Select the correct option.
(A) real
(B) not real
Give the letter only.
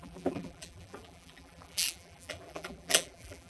B